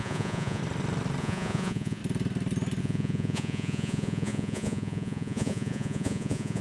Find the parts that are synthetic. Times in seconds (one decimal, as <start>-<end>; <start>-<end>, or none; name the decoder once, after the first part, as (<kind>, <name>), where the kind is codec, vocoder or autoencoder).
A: 0.0-0.6 (vocoder, Vocos); 1.2-2.0; 2.8-6.6